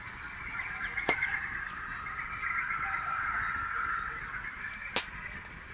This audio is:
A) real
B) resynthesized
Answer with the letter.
A